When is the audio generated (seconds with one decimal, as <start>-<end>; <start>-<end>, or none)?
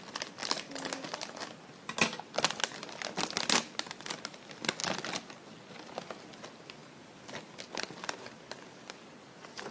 none